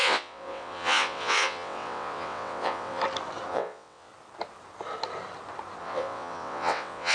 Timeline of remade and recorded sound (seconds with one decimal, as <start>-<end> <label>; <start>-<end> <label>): 0.0-3.0 remade; 3.0-3.5 recorded; 3.5-4.1 remade; 4.1-5.8 recorded; 5.8-7.1 remade